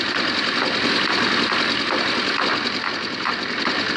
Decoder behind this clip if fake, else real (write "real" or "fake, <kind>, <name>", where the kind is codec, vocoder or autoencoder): real